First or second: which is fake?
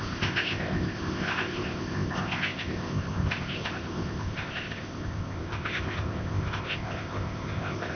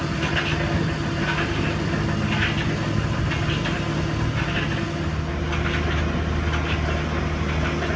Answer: first